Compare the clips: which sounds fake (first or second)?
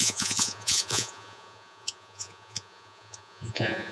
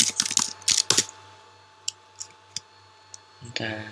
first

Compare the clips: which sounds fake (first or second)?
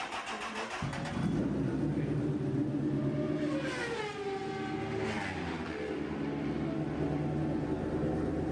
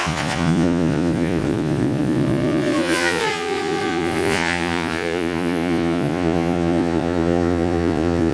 second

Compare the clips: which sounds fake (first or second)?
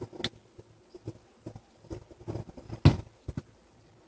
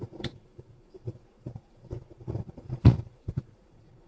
second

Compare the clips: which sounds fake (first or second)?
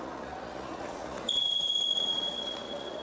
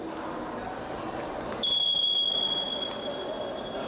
first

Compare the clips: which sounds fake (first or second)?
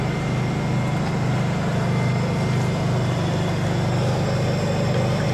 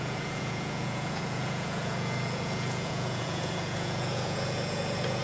second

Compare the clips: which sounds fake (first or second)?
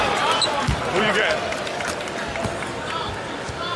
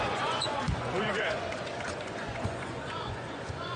second